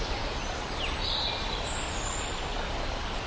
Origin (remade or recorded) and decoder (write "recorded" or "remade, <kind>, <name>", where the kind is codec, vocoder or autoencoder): recorded